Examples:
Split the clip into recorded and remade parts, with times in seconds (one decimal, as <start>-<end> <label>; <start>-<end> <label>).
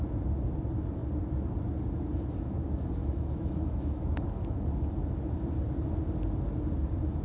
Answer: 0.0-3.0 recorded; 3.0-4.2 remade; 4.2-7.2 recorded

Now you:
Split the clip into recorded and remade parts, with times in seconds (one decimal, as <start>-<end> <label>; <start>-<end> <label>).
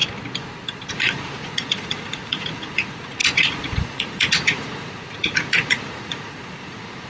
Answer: 0.0-0.9 recorded; 0.9-7.1 remade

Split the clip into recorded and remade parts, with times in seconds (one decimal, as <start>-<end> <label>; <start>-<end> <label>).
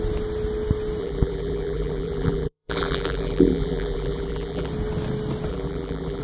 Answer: 0.0-1.0 recorded; 1.0-4.7 remade; 4.7-5.5 recorded; 5.5-6.2 remade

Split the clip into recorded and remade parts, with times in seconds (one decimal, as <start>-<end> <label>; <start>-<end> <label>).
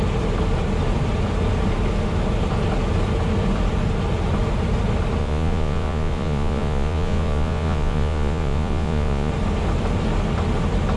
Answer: 0.0-5.2 recorded; 5.2-9.3 remade; 9.3-11.0 recorded